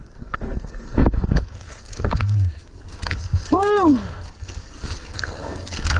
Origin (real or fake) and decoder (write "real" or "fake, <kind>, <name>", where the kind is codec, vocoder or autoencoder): fake, codec, SNAC